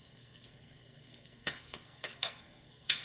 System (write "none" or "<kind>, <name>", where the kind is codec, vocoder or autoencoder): codec, SNAC